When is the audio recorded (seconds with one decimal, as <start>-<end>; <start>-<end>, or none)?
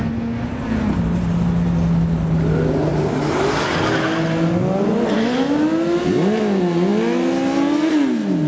0.0-8.5